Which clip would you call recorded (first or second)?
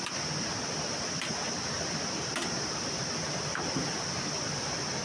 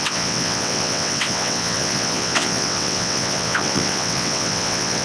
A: first